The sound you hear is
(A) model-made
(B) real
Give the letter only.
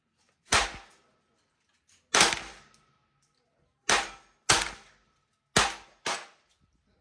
B